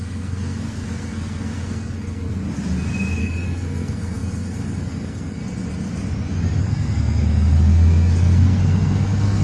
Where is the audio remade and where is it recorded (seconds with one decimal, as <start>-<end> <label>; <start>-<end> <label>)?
0.0-2.4 remade; 2.4-3.2 recorded; 3.2-5.4 remade; 5.4-6.6 recorded; 6.6-9.4 remade